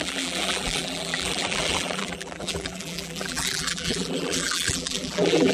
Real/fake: fake